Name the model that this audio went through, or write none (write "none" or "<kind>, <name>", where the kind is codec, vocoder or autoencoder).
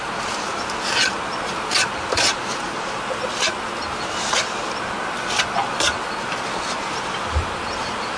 none